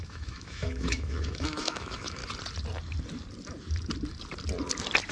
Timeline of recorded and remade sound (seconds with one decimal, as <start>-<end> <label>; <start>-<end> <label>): 0.0-2.2 remade; 2.2-5.1 recorded